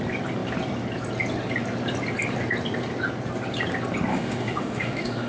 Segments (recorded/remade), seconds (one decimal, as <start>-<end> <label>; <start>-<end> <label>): 0.0-4.1 recorded; 4.1-5.3 remade